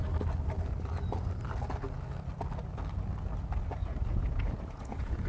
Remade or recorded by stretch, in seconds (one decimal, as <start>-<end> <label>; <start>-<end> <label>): 0.0-3.8 recorded; 3.8-5.3 remade